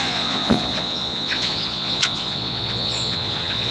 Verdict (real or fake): fake